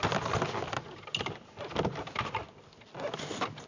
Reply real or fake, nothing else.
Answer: real